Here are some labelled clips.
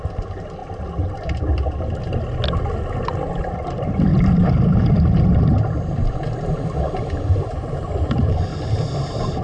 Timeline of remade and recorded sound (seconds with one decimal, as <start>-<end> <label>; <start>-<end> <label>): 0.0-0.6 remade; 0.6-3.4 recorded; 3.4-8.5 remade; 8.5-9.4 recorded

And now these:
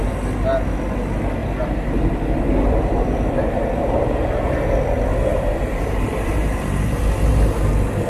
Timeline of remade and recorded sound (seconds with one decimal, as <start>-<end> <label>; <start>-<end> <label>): 0.0-1.4 recorded; 1.4-4.7 remade; 4.7-5.3 recorded; 5.3-7.0 remade; 7.0-8.1 recorded

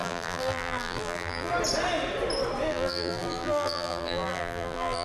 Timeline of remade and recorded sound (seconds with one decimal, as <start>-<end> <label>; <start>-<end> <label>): 0.0-1.5 remade; 1.5-2.7 recorded; 2.7-5.0 remade